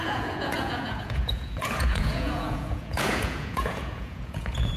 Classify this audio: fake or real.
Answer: fake